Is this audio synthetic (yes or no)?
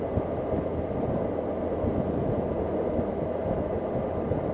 no